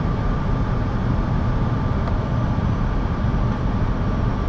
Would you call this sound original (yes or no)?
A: yes